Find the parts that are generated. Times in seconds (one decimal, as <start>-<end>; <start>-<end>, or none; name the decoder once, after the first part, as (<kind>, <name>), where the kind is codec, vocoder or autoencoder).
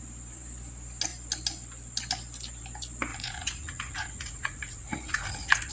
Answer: 3.1-5.7 (vocoder, Vocos)